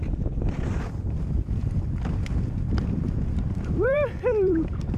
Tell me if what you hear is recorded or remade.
remade